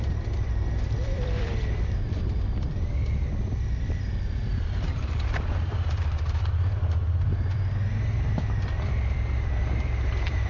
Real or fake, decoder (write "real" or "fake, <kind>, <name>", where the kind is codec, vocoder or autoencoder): fake, vocoder, BigVGAN v2